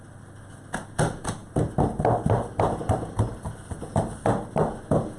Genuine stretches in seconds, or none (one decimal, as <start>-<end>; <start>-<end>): 1.4-3.9